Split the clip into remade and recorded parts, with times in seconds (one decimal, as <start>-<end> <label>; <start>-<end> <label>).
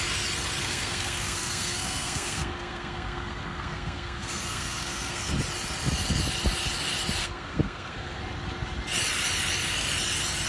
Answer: 0.0-0.6 recorded; 0.6-5.3 remade; 5.3-7.2 recorded; 7.2-8.2 remade; 8.2-10.5 recorded